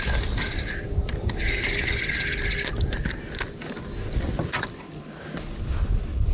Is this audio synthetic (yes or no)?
no